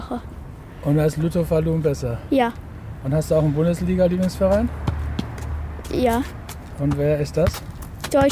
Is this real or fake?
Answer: real